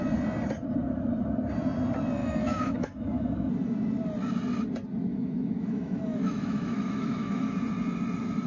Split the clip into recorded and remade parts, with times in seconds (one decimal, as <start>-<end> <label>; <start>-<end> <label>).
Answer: 0.0-2.2 recorded; 2.2-3.5 remade; 3.5-5.1 recorded; 5.1-7.6 remade; 7.6-8.5 recorded